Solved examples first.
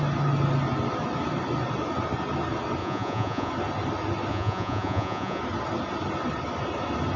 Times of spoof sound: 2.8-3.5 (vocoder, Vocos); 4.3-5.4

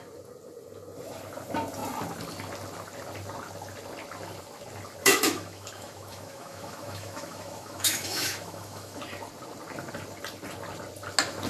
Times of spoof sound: 5.0-9.0 (autoencoder, DAC-VAE)

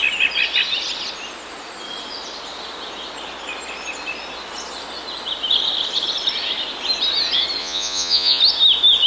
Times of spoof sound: 7.6-8.4 (vocoder, Vocos)

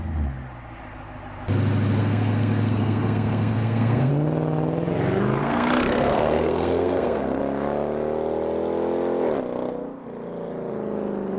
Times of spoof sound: 2.0-4.1 (codec, SNAC); 5.4-7.4